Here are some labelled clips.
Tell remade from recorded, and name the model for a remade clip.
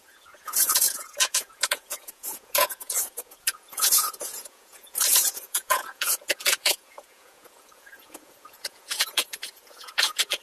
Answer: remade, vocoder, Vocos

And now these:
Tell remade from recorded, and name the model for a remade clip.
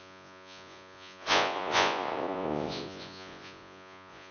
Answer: remade, vocoder, Vocos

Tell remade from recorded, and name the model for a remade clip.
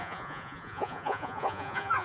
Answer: remade, vocoder, Vocos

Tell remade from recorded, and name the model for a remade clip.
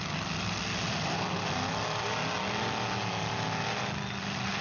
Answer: recorded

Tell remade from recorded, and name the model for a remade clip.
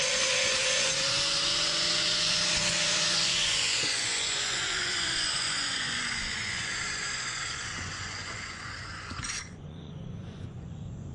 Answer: remade, vocoder, Vocos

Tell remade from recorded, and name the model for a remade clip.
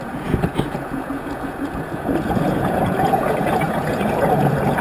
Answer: remade, vocoder, Vocos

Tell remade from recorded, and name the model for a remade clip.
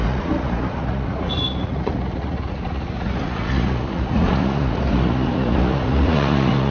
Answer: remade, vocoder, Vocos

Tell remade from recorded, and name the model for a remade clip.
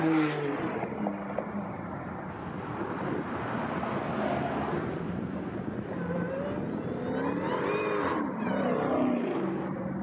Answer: recorded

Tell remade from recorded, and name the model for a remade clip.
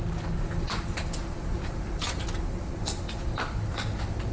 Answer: recorded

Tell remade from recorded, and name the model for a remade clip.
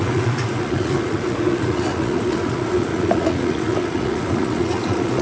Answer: remade, vocoder, Vocos